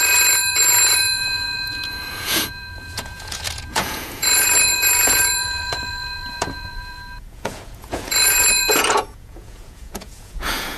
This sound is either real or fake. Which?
fake